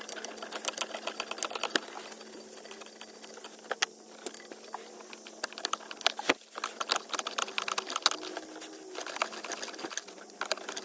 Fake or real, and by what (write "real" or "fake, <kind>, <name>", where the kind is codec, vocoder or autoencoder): real